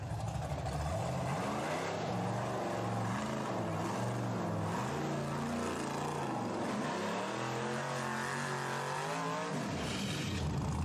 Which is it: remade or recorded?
recorded